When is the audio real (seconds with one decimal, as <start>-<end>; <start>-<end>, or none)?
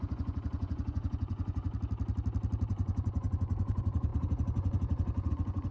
1.7-2.7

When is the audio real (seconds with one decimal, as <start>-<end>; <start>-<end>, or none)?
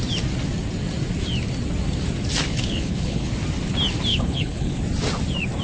0.0-2.5; 3.3-4.1; 4.8-5.6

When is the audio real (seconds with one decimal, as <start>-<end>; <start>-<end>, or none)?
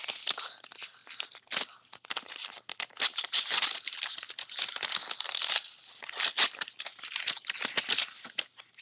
0.0-8.8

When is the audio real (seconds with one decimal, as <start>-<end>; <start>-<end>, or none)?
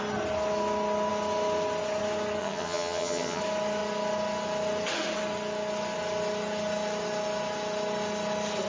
0.0-2.4; 3.4-8.7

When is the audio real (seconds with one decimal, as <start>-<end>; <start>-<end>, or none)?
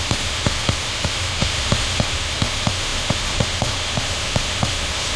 none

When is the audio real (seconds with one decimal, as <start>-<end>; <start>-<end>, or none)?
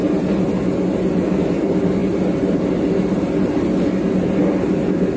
0.0-2.0; 2.7-5.2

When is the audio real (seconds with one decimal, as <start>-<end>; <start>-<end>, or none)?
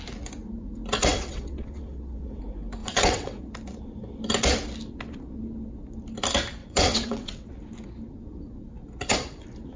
0.0-1.1; 2.4-2.8; 3.5-6.6; 7.5-9.8